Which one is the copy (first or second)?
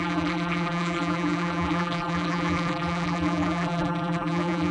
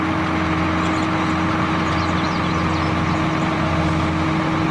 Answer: first